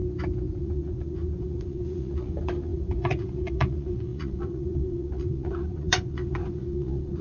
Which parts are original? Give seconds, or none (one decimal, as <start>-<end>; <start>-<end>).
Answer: 0.0-0.6